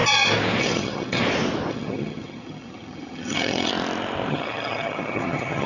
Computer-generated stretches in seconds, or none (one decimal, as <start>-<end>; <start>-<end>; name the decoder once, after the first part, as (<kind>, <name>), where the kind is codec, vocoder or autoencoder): 0.6-1.2 (vocoder, HiFi-GAN); 1.7-3.7; 4.3-5.7